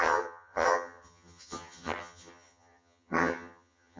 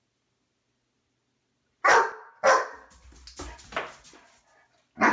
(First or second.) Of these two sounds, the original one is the second